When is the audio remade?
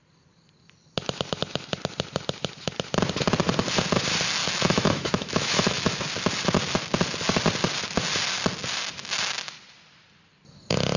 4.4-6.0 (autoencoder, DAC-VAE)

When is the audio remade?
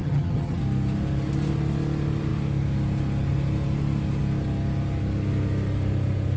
0.0-0.6 (vocoder, HiFi-GAN)